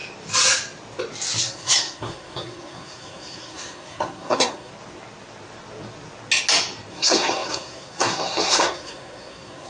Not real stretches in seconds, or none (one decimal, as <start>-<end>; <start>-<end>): 1.4-4.7; 6.9-9.7